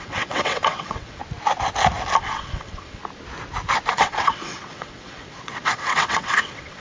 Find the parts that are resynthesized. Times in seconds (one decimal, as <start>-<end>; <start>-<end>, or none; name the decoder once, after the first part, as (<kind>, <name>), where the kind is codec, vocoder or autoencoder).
0.0-1.2 (vocoder, WaveNeXt); 2.2-3.0; 3.9-6.8